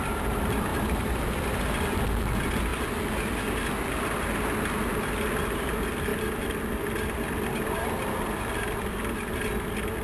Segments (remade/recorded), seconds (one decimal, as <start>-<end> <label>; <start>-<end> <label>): 0.0-0.7 recorded; 0.7-1.2 remade; 1.2-10.0 recorded

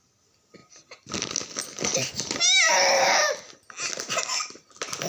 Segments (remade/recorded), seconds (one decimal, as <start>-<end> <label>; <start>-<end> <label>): 0.0-5.1 recorded

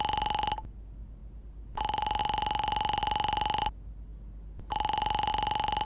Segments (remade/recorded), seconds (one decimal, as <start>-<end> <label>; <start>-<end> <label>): 0.0-1.2 recorded; 1.2-2.2 remade; 2.2-4.1 recorded; 4.1-5.3 remade; 5.3-5.8 recorded

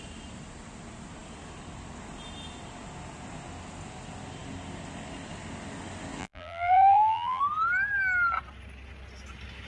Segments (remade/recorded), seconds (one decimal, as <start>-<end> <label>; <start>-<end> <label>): 0.0-6.2 recorded; 6.2-7.4 remade; 7.4-9.7 recorded

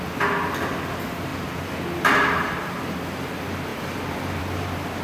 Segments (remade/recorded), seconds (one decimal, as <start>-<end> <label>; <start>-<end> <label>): 0.0-1.3 recorded; 1.3-2.9 remade; 2.9-3.7 recorded; 3.7-4.4 remade; 4.4-5.0 recorded

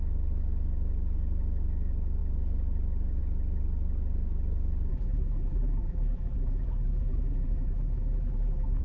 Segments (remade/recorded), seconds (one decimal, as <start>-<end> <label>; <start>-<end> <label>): 0.0-4.9 recorded; 4.9-8.8 remade

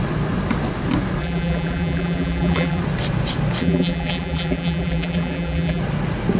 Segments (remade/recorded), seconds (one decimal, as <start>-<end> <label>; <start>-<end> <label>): 0.0-1.2 recorded; 1.2-2.8 remade; 2.8-3.6 recorded; 3.6-5.8 remade; 5.8-6.4 recorded

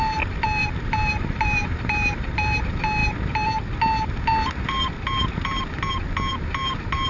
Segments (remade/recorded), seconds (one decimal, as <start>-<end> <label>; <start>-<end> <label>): 0.0-0.6 recorded; 0.6-2.6 remade; 2.6-7.1 recorded